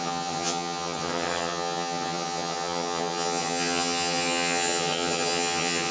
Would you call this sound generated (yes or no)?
yes